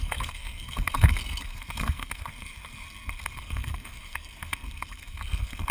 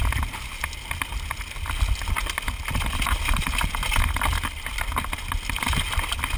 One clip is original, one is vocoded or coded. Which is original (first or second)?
second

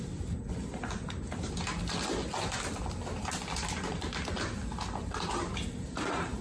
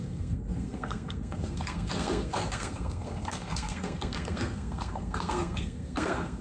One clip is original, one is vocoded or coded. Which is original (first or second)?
first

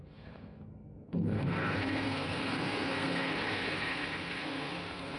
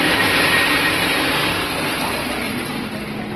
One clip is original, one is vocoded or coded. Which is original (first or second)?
second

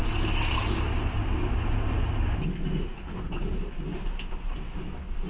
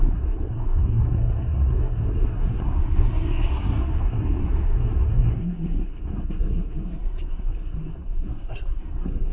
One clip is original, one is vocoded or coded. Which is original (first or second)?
first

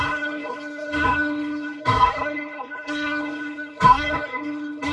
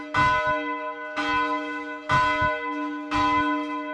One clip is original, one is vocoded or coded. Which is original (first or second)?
second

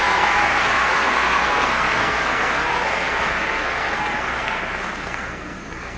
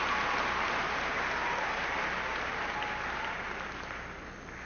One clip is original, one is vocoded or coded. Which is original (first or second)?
second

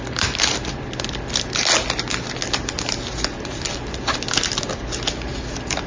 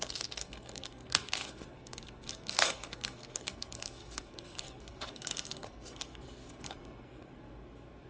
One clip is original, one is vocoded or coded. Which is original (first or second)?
first